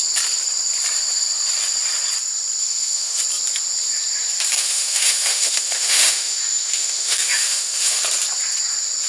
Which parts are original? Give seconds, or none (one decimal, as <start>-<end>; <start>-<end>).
0.0-2.6; 3.2-4.5; 8.0-9.1